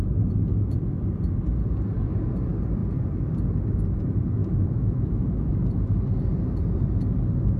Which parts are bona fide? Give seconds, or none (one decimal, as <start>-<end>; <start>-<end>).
0.0-0.5; 1.0-4.4; 5.5-7.6